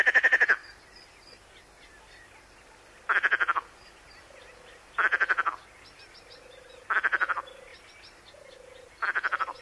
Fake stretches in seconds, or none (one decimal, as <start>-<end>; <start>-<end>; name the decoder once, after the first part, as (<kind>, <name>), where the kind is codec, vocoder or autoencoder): none